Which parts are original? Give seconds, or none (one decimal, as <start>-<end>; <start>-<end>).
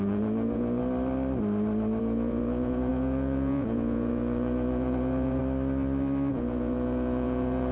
0.8-2.0; 5.4-6.3